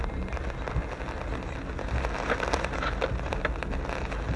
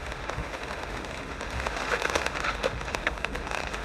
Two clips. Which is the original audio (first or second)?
first